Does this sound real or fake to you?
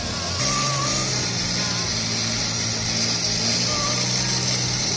real